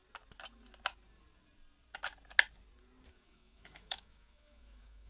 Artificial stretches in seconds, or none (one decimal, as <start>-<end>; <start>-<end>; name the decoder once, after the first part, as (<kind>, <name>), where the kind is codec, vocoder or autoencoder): 3.1-5.1 (autoencoder, DAC-VAE)